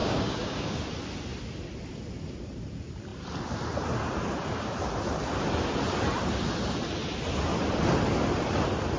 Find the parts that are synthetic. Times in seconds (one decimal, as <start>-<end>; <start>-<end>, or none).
0.0-0.9